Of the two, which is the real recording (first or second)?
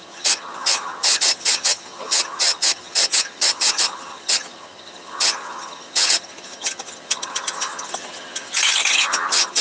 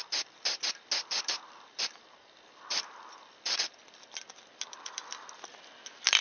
second